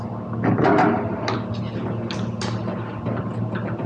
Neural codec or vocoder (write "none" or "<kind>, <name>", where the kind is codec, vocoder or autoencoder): none